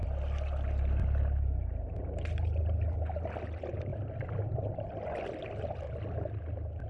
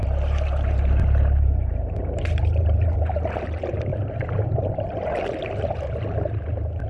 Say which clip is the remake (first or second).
second